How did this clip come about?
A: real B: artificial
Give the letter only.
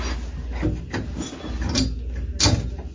A